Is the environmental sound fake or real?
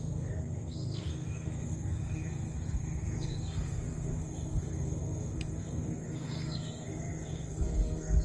fake